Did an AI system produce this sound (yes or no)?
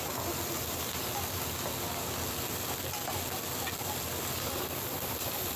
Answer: no